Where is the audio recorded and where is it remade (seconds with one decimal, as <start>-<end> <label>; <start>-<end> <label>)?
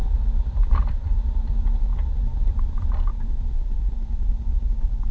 0.0-1.3 remade; 1.3-2.5 recorded; 2.5-4.3 remade; 4.3-5.1 recorded